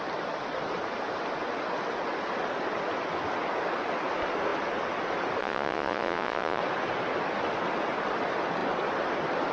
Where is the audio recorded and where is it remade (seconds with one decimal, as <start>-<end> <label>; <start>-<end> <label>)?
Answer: 0.0-5.4 recorded; 5.4-6.6 remade; 6.6-9.5 recorded